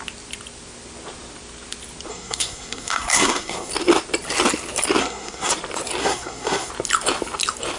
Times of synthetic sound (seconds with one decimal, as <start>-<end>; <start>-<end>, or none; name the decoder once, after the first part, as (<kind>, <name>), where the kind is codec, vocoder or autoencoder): 2.1-3.7 (codec, SNAC); 5.0-5.5; 6.0-6.7